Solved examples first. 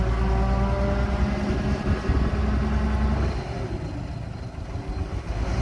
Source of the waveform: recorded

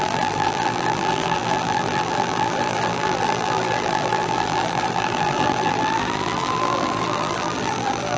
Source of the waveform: remade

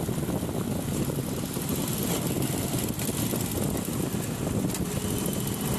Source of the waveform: recorded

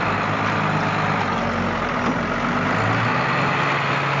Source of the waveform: recorded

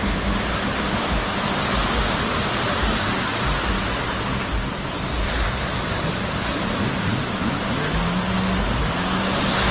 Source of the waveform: recorded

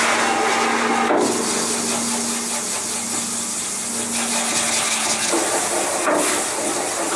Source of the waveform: recorded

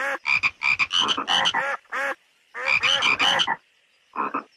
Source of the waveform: recorded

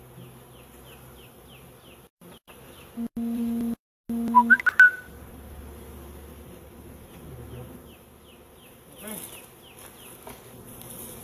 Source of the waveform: recorded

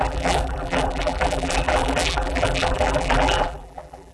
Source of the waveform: remade